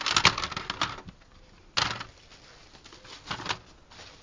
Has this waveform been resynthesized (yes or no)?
no